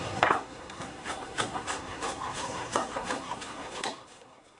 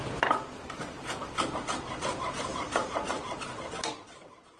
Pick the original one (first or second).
second